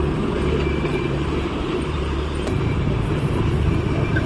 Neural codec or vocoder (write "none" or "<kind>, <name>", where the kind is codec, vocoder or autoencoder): vocoder, BigVGAN v2